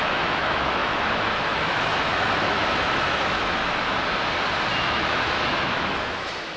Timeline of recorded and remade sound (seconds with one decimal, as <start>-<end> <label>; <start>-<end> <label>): 0.0-3.6 remade; 3.6-4.8 recorded; 4.8-6.6 remade